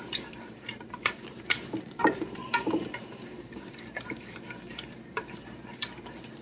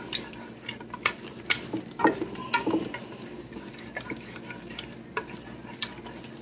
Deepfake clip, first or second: first